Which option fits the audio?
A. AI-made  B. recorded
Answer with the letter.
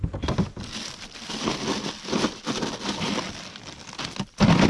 B